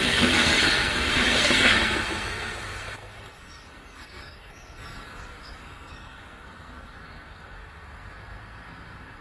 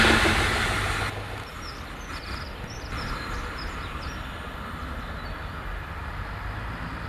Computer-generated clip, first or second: first